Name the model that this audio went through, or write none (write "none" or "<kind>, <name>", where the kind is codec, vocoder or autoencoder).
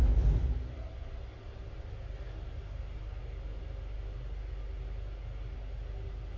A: none